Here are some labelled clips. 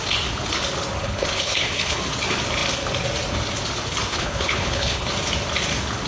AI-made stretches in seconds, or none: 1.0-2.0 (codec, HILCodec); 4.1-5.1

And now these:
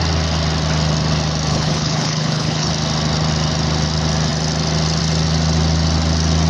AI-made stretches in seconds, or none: 1.5-2.7 (codec, HILCodec)